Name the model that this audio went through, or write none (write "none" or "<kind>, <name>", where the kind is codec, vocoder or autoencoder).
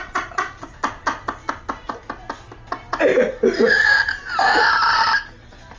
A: none